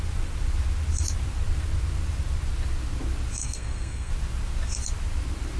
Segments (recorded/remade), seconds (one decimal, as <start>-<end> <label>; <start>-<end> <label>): 0.0-3.4 recorded; 3.4-4.1 remade; 4.1-5.6 recorded